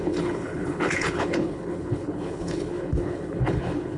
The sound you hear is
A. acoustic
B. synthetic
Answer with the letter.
B